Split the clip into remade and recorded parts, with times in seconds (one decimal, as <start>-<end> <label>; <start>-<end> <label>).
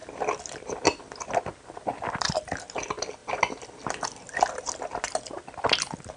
0.0-6.2 recorded